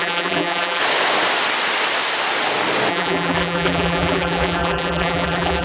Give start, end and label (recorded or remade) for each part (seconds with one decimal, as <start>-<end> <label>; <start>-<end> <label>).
0.0-0.8 remade; 0.8-2.9 recorded; 2.9-5.6 remade